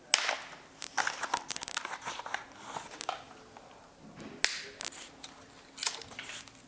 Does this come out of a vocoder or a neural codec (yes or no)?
no